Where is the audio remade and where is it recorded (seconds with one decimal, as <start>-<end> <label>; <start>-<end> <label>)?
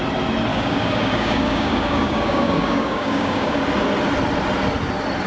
0.0-0.5 recorded; 0.5-3.6 remade; 3.6-5.3 recorded